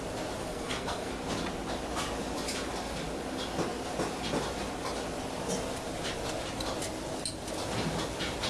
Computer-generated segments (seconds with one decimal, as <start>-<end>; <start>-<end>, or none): 0.4-1.1